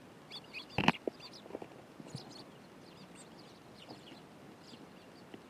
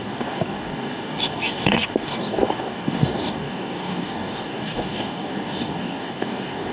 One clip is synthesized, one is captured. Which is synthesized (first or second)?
second